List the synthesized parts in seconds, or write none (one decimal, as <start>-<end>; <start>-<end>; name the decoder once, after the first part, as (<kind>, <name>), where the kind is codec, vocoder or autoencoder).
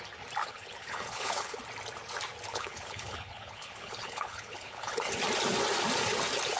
0.4-1.6 (codec, HILCodec); 2.5-5.1